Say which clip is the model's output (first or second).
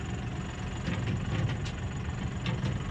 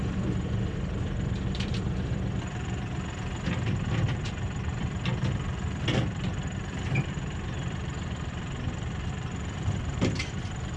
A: second